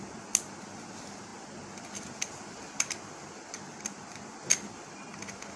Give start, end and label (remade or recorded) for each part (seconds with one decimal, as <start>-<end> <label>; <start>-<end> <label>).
0.0-5.6 recorded